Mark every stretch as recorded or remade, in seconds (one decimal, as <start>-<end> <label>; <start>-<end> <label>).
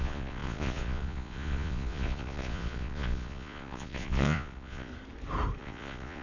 0.0-4.9 remade; 4.9-5.6 recorded; 5.6-6.2 remade